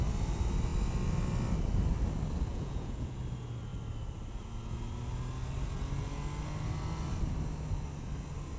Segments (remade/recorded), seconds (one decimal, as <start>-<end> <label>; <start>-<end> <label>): 0.0-2.5 recorded; 2.5-3.2 remade; 3.2-8.6 recorded